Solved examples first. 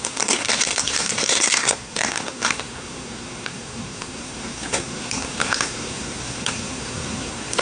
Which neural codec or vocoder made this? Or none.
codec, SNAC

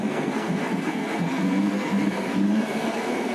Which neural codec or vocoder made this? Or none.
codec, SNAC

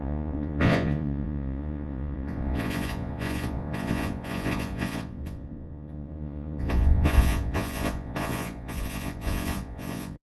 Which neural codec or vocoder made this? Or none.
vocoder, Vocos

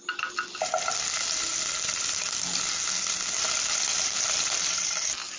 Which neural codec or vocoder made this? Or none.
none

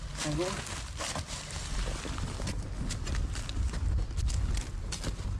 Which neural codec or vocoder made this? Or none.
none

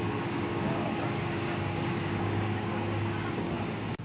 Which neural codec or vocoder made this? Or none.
codec, DAC